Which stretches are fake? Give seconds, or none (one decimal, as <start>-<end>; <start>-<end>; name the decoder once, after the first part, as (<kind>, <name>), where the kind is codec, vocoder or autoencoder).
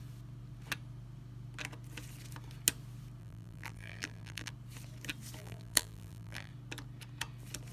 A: 3.2-4.5 (vocoder, BigVGAN v2); 5.4-6.5